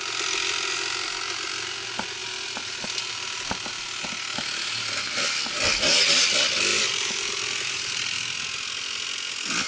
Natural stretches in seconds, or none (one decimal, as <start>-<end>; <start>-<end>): 0.0-6.7; 7.9-9.7